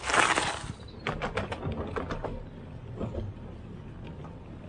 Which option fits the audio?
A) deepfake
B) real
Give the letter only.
B